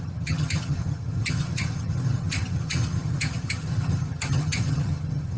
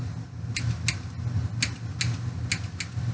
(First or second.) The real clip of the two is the second